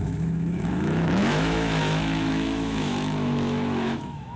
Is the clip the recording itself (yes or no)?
no